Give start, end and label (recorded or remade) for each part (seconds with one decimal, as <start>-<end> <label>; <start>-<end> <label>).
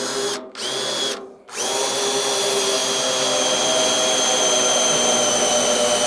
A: 0.0-6.1 recorded